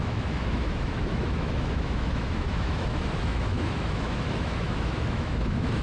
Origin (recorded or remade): remade